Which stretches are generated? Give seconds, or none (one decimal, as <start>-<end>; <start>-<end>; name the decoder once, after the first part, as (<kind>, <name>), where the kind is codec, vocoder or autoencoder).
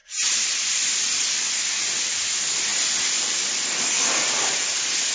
none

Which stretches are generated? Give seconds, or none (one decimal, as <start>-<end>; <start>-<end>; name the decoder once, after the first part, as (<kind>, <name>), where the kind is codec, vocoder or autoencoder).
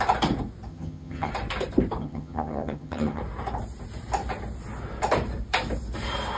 0.7-1.3 (vocoder, HiFi-GAN); 2.0-3.2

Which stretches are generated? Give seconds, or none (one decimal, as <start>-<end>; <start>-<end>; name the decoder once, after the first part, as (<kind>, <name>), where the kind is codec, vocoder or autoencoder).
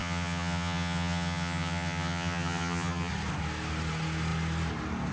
0.0-3.1 (vocoder, HiFi-GAN)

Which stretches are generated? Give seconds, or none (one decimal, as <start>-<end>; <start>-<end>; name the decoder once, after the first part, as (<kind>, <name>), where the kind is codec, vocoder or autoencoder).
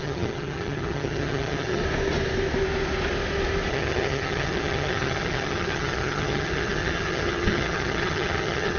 0.0-1.8 (vocoder, HiFi-GAN); 3.7-8.8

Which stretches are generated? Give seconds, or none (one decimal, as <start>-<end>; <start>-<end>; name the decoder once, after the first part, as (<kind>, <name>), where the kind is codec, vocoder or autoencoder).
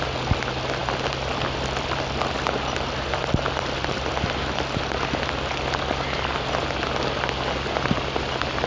none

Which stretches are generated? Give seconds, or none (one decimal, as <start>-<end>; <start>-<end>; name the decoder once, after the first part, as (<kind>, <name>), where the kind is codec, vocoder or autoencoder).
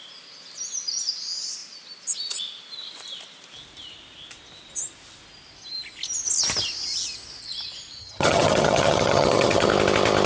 8.0-9.7 (vocoder, HiFi-GAN)